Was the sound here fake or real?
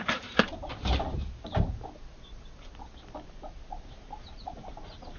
real